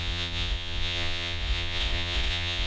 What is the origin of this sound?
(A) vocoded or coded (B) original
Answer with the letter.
A